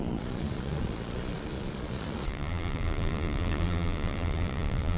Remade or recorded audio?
remade